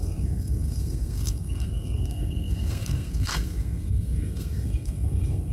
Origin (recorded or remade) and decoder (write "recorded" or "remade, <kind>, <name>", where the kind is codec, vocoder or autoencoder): remade, codec, SNAC